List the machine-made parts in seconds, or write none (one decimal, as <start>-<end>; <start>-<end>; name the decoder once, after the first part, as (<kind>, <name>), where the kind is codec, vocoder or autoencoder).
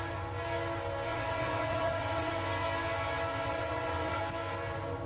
1.1-2.3 (vocoder, WaveNeXt); 3.5-4.2